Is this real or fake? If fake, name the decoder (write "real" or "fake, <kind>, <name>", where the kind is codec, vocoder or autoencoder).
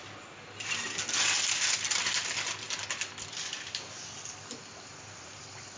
real